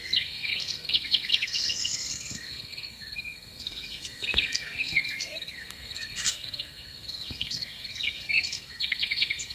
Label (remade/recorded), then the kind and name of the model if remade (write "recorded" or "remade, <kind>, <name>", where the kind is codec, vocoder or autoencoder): remade, codec, SNAC